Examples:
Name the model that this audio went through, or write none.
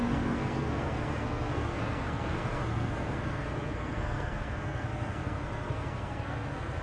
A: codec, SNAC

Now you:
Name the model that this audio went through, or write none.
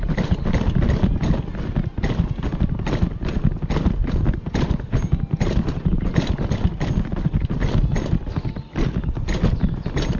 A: none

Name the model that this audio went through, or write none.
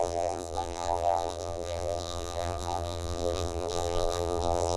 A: vocoder, BigVGAN v2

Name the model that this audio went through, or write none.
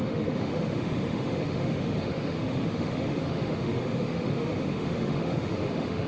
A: autoencoder, DAC-VAE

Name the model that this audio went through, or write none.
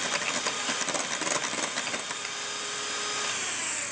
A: none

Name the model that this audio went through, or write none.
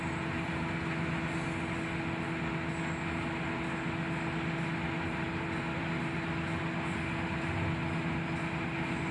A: none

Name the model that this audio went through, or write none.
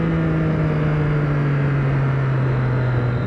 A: none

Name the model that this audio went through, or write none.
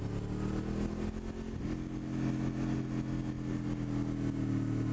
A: none